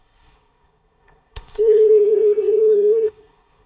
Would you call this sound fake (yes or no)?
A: yes